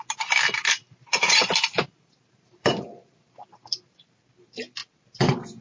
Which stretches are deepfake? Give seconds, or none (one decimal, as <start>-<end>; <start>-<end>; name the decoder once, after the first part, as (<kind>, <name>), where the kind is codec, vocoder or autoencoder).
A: 0.8-4.2 (vocoder, BigVGAN v2)